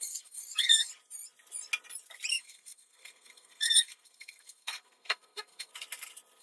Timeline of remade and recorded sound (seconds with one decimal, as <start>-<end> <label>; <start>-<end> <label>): 0.0-0.9 remade; 0.9-2.3 recorded; 2.3-5.7 remade; 5.7-6.4 recorded